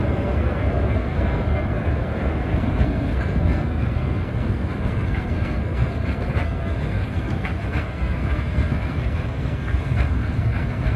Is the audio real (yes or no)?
no